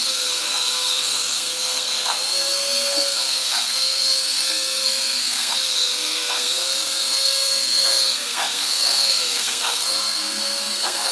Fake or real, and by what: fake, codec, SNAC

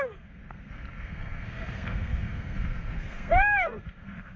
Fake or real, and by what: fake, codec, SNAC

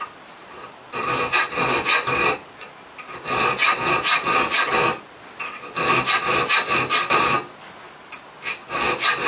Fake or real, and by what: real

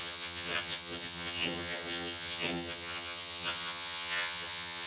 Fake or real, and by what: fake, vocoder, HiFi-GAN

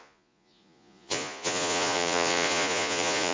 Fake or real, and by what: fake, vocoder, Vocos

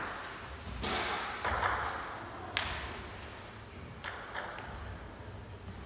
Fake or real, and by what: real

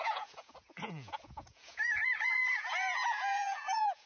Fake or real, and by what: fake, vocoder, Vocos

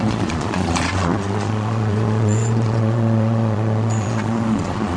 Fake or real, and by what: fake, vocoder, Vocos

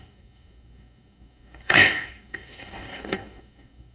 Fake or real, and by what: fake, codec, DAC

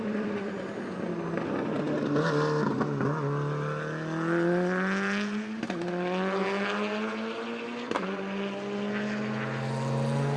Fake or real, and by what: real